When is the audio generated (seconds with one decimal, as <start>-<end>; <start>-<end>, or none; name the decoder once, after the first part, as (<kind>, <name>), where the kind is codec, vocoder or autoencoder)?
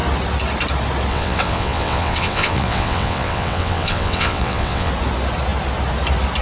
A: 1.1-4.9 (vocoder, WaveNeXt)